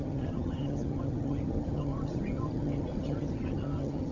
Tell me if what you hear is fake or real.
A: fake